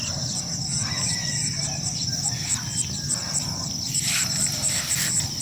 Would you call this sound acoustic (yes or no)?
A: yes